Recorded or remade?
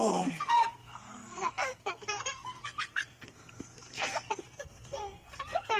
remade